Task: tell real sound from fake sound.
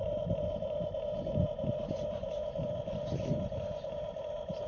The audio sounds real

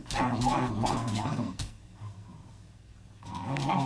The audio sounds fake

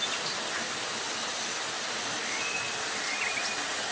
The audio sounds real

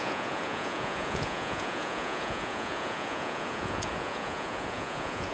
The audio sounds fake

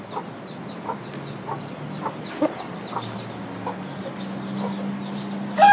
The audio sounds real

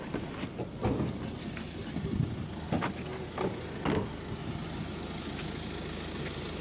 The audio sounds real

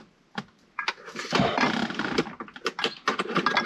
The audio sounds real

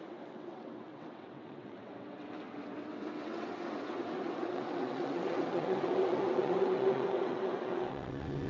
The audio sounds fake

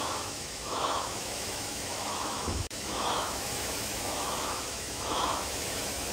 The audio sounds fake